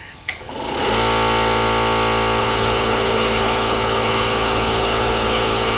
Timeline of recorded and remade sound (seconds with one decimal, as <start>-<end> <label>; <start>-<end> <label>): 0.0-0.5 remade; 0.5-2.4 recorded; 2.4-5.8 remade